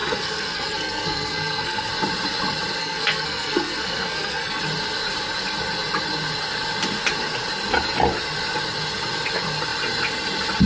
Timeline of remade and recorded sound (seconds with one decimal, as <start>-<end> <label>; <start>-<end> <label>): 0.0-1.9 remade; 1.9-2.8 recorded; 2.8-4.6 remade; 4.6-10.7 recorded